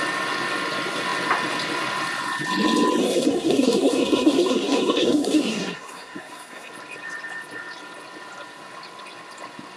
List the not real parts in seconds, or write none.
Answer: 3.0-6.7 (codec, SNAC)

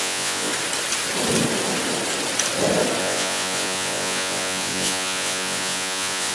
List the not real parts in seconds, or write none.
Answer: 0.0-0.5 (vocoder, Vocos); 3.0-6.3

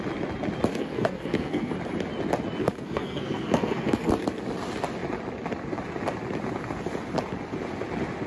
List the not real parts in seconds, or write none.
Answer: 0.7-1.7 (codec, SNAC); 2.6-4.1

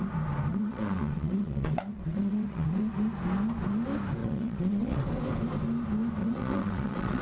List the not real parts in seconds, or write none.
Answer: 0.5-2.8 (vocoder, WaveNeXt); 4.2-5.0; 6.2-7.2

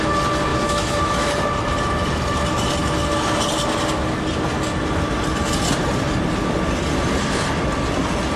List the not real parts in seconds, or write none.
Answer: 0.5-1.3 (autoencoder, DAC-VAE)

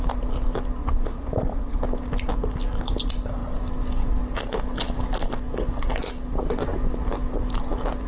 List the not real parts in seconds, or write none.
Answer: 0.8-1.8 (vocoder, Vocos)

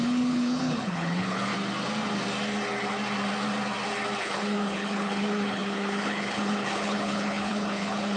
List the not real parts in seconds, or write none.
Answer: 0.0-1.5 (codec, HILCodec); 4.2-8.2

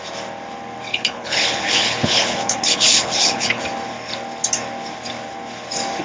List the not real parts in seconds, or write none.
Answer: 0.9-3.6 (codec, HILCodec)